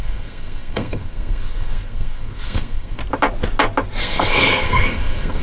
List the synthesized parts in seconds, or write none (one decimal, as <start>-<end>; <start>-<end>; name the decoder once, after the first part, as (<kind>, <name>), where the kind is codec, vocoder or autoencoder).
0.0-3.0 (codec, SNAC); 4.0-5.4